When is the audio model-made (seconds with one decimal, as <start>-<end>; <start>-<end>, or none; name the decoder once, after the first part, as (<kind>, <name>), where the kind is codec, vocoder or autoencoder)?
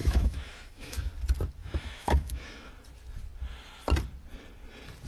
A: 0.0-1.1 (autoencoder, DAC-VAE); 1.6-2.7